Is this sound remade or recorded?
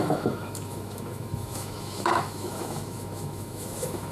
remade